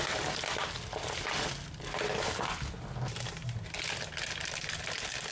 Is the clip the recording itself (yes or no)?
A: yes